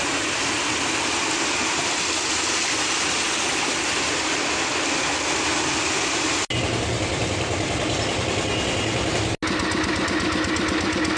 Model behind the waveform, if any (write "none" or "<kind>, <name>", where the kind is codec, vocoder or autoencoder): none